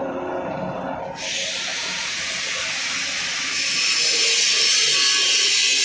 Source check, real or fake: real